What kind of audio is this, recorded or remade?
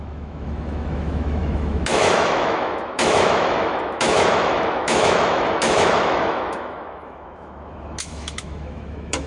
remade